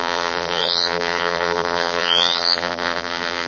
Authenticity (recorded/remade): remade